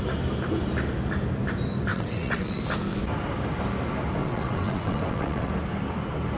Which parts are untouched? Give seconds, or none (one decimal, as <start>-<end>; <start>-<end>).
0.0-1.9; 2.6-4.2; 5.5-6.4